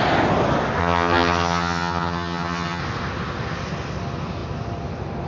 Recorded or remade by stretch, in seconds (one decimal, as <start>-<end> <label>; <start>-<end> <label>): 0.0-0.8 recorded; 0.8-2.8 remade; 2.8-5.3 recorded